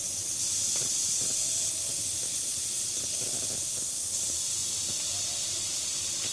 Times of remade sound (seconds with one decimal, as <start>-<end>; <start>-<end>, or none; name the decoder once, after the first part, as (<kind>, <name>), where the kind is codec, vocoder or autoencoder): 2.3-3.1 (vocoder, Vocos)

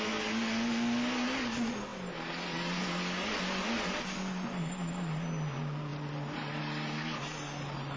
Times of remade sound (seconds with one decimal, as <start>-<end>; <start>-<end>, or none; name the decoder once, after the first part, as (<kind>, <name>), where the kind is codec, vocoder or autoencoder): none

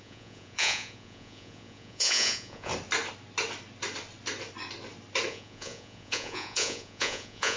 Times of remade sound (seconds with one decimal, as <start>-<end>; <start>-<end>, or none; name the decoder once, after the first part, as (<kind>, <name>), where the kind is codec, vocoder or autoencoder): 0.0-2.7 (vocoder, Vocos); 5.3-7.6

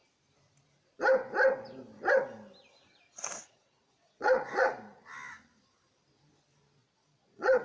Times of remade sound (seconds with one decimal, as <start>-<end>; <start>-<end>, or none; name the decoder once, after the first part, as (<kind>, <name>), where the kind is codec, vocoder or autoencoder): 3.3-4.7 (vocoder, Vocos); 6.8-7.6

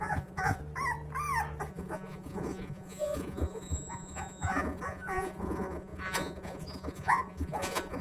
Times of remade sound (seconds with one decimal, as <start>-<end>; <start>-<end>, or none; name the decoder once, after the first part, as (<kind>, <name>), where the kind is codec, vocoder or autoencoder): 0.0-0.6 (vocoder, Vocos); 1.7-8.0

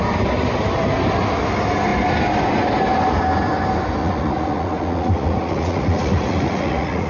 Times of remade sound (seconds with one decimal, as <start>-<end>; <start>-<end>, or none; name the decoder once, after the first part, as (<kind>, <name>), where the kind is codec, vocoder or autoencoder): 4.0-7.1 (vocoder, Vocos)

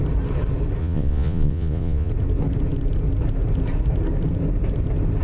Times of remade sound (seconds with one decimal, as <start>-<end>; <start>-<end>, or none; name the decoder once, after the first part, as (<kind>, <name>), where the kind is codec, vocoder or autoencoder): 0.8-2.1 (vocoder, Vocos)